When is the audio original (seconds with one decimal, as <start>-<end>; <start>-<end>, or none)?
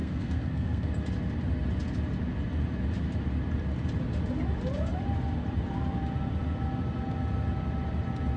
0.9-8.4